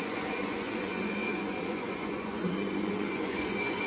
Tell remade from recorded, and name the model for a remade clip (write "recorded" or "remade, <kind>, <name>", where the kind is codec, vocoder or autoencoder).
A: remade, vocoder, Vocos